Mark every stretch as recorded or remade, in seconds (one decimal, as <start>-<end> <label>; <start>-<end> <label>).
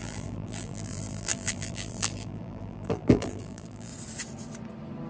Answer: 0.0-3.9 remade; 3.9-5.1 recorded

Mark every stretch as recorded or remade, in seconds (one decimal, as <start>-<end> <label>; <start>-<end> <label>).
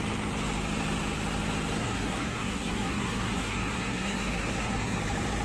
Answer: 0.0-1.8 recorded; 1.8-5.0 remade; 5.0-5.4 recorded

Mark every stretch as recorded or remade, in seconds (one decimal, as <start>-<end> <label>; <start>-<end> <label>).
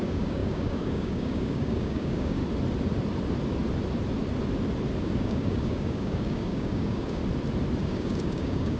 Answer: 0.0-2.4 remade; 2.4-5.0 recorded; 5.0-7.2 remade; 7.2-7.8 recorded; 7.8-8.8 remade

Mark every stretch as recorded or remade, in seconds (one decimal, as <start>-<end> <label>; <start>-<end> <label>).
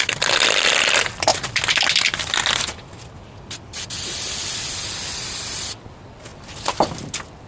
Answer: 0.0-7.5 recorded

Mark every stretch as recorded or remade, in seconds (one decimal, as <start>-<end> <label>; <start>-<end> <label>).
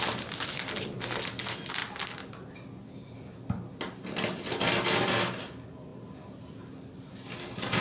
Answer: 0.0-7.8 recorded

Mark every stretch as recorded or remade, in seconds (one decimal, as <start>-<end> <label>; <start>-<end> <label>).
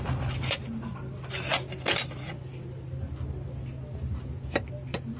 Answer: 0.0-5.2 recorded